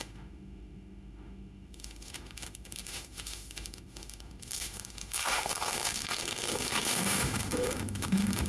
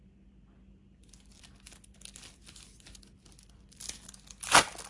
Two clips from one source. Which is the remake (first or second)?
first